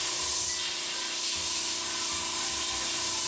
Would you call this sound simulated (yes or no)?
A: no